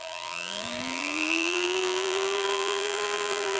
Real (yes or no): no